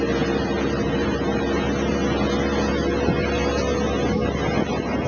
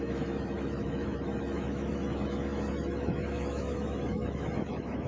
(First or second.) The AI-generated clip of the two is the second